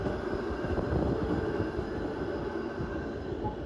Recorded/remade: recorded